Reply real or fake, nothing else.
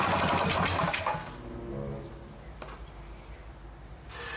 real